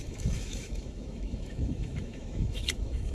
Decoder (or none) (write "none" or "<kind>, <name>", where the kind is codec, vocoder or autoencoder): autoencoder, DAC-VAE